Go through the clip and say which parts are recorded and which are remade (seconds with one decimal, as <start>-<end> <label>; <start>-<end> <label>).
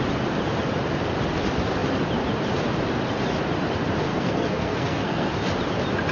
0.0-4.1 recorded; 4.1-5.3 remade; 5.3-6.1 recorded